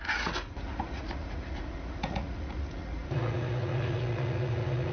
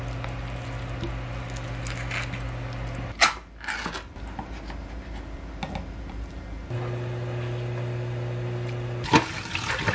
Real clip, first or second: second